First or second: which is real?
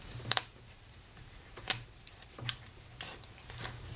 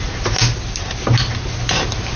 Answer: second